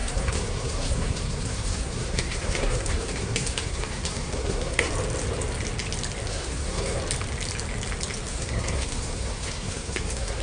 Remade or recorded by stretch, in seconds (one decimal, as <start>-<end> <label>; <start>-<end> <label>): 0.0-4.9 remade; 4.9-6.3 recorded; 6.3-7.0 remade; 7.0-8.3 recorded; 8.3-10.4 remade